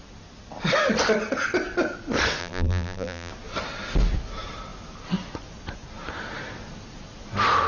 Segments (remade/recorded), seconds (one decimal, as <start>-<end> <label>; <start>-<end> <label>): 0.0-2.4 recorded; 2.4-3.3 remade; 3.3-7.7 recorded